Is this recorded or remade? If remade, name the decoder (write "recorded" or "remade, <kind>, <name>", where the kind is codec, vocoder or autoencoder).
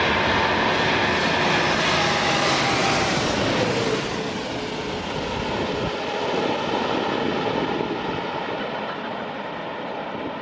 recorded